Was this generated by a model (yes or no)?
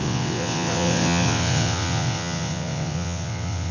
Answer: yes